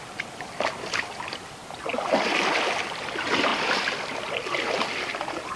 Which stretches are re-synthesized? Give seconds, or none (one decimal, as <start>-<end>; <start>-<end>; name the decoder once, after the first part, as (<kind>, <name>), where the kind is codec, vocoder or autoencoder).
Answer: none